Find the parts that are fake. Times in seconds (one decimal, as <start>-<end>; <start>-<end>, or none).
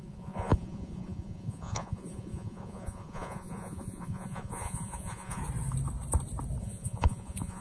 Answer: 0.0-5.4; 6.6-7.6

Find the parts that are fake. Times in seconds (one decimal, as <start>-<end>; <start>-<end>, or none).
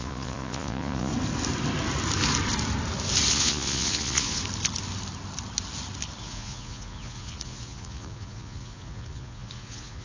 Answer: 0.0-1.1; 3.3-4.4; 6.2-10.0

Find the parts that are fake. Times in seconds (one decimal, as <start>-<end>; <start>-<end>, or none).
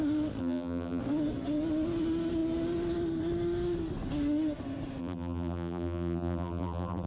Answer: 0.4-1.0; 5.0-7.1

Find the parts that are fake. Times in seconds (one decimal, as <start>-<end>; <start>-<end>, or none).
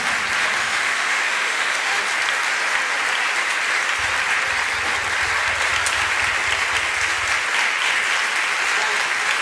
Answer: 0.6-2.0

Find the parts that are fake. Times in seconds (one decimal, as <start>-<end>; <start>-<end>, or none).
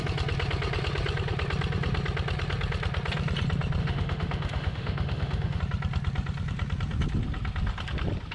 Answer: 3.8-5.6